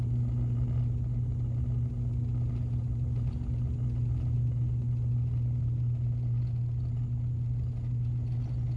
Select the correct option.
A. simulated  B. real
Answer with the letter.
B